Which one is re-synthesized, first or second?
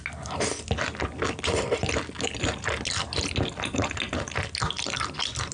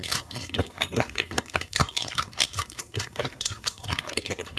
second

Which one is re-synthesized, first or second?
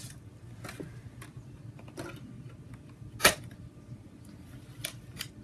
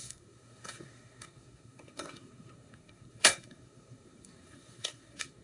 second